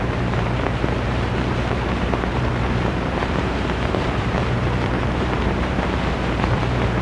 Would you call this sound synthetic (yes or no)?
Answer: yes